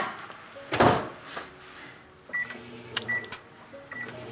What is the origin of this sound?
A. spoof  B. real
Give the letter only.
B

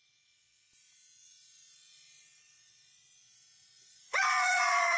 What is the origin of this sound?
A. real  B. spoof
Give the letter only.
B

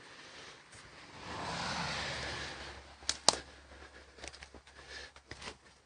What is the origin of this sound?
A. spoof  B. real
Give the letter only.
B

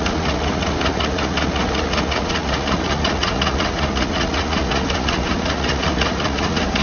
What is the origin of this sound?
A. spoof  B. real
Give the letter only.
A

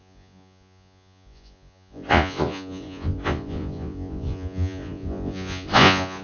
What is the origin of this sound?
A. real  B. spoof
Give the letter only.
B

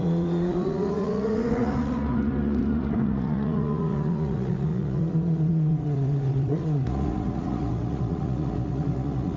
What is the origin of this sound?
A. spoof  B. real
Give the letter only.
A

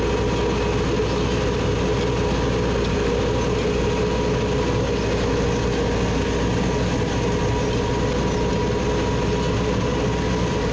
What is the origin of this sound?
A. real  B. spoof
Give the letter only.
A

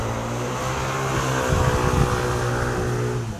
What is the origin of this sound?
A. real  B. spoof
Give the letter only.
A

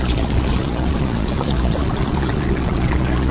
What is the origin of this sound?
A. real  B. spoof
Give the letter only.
B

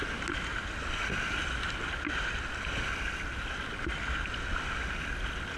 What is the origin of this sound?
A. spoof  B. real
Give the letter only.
B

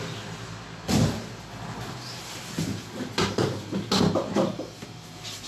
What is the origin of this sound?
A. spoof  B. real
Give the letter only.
B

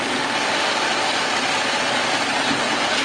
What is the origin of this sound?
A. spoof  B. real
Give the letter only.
B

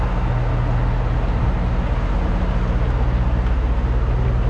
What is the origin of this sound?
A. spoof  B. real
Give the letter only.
B